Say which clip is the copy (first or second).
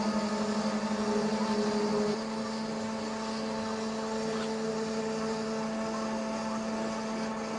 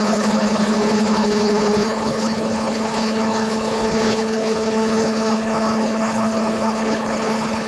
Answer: second